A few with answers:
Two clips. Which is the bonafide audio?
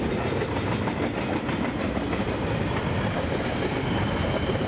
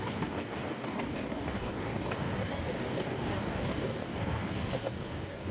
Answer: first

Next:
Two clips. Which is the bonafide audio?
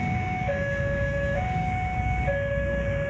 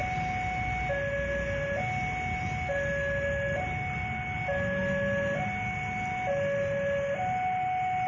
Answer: second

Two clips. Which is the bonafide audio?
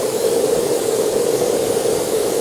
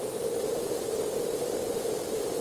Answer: second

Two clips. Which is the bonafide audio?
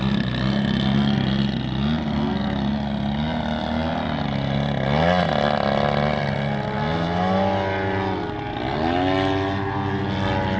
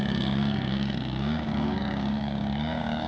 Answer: first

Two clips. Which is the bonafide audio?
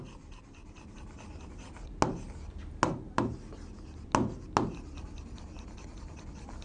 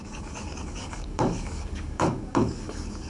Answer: first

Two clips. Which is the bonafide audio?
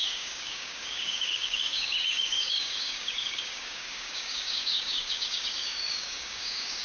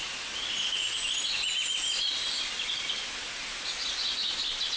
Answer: second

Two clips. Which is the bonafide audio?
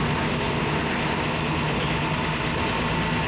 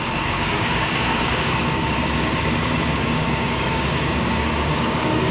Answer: first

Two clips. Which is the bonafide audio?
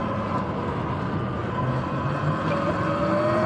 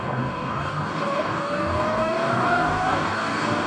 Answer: first